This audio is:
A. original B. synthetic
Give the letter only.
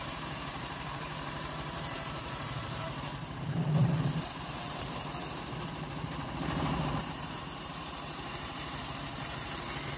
B